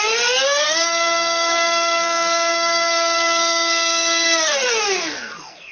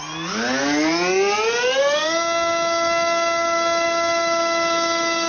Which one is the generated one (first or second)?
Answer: first